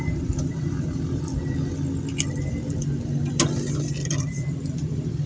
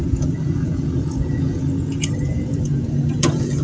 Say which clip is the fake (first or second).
second